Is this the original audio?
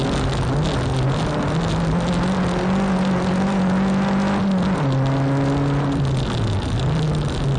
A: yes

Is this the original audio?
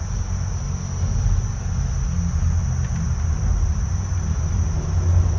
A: yes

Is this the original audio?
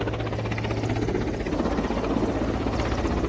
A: yes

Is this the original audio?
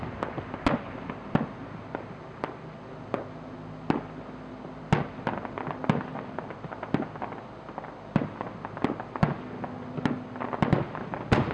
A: yes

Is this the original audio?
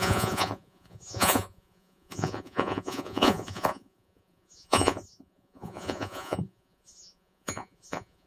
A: no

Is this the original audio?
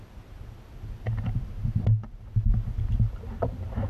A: yes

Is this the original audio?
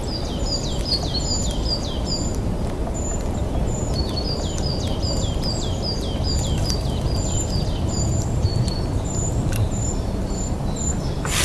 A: no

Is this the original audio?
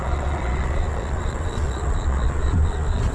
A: no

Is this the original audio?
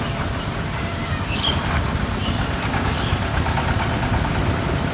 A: yes